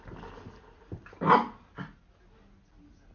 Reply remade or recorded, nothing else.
recorded